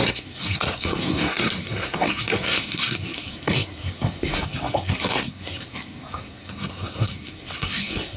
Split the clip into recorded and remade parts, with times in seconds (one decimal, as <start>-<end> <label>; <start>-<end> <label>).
0.0-8.2 remade